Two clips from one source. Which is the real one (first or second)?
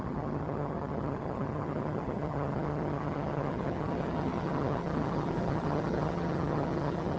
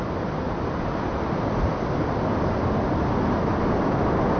second